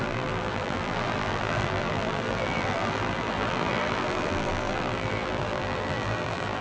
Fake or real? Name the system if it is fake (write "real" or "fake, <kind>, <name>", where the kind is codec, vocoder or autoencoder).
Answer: fake, vocoder, BigVGAN v2